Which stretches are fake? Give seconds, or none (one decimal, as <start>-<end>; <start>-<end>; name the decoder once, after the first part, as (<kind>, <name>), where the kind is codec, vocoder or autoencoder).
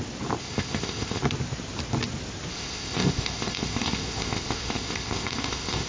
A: 0.4-1.2 (codec, ZipCodec); 2.5-5.9